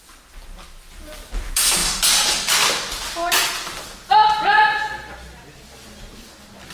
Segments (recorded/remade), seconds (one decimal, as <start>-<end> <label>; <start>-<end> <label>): 0.0-6.7 recorded